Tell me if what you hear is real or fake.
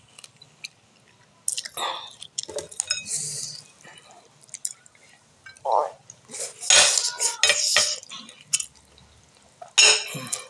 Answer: real